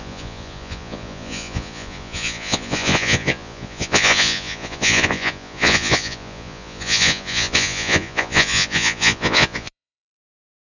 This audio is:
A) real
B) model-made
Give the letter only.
B